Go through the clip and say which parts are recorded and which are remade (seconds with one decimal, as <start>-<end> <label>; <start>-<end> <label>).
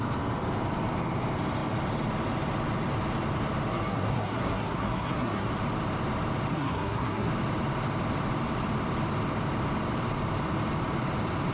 0.0-3.7 recorded; 3.7-5.5 remade; 5.5-6.5 recorded; 6.5-7.3 remade; 7.3-11.5 recorded